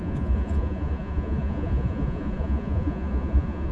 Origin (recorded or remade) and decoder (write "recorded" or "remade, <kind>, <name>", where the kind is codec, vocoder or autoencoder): remade, vocoder, Vocos